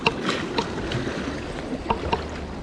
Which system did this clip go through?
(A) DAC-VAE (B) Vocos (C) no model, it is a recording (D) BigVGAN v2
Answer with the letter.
D